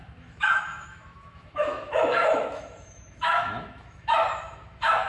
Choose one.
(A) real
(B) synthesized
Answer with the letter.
B